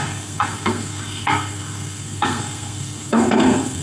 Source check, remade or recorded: remade